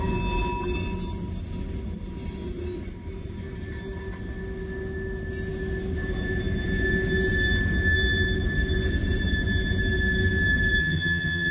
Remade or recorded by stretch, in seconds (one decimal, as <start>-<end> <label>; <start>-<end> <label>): 0.0-10.8 recorded; 10.8-11.5 remade

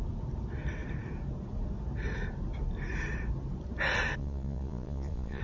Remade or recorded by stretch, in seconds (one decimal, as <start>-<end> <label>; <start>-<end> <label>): 0.0-4.2 recorded; 4.2-5.4 remade

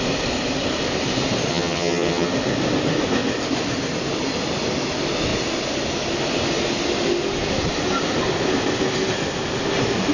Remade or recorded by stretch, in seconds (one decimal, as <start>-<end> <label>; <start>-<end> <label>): 0.0-1.5 recorded; 1.5-2.3 remade; 2.3-10.1 recorded

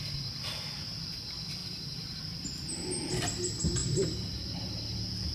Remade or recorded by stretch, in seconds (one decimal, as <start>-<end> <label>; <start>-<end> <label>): 0.0-1.6 recorded; 1.6-2.2 remade; 2.2-3.8 recorded; 3.8-4.6 remade; 4.6-5.3 recorded

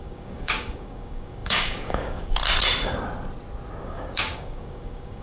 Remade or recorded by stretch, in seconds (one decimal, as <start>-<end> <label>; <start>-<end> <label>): 0.0-2.4 remade; 2.4-3.8 recorded; 3.8-5.2 remade